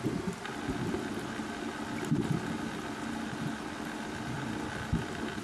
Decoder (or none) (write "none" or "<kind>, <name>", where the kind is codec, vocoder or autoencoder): none